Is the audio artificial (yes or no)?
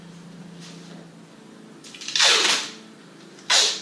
no